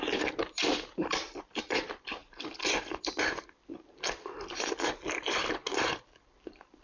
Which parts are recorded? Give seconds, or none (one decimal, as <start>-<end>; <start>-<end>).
2.2-6.3